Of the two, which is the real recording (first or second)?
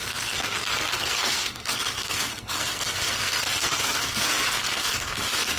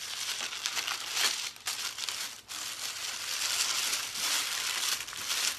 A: second